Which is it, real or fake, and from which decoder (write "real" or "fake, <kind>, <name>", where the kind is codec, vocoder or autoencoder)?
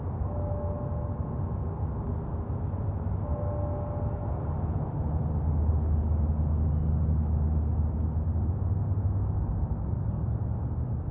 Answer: real